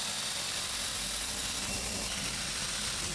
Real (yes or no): yes